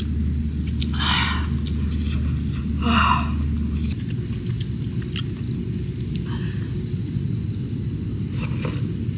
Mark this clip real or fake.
real